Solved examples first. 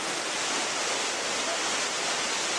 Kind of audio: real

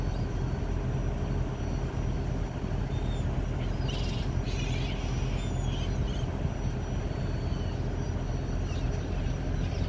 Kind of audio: real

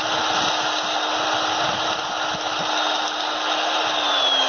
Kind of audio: real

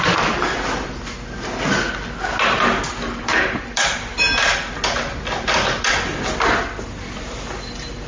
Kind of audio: real